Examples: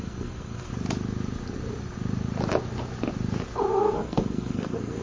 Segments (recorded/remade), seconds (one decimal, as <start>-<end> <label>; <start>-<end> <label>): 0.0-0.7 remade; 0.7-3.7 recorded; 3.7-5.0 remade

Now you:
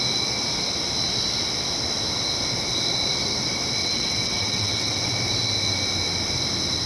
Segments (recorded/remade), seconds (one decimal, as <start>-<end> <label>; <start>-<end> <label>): 0.0-3.8 recorded; 3.8-5.1 remade; 5.1-6.9 recorded

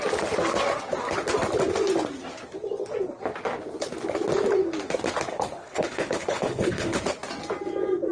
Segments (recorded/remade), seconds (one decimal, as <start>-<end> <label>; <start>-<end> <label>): 0.0-5.3 recorded; 5.3-7.0 remade; 7.0-8.1 recorded

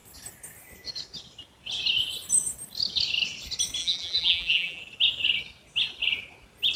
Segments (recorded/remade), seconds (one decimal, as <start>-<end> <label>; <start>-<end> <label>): 0.0-3.8 recorded; 3.8-4.8 remade; 4.8-6.8 recorded